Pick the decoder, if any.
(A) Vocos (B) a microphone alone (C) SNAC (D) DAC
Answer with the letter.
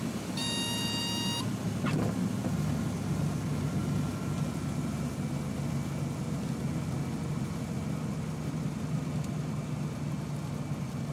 B